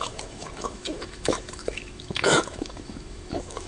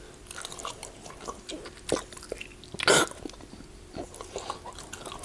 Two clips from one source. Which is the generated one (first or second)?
first